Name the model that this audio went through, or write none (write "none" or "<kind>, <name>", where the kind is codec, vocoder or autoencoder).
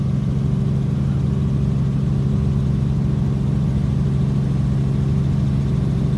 none